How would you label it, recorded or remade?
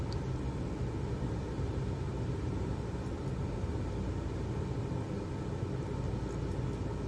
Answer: recorded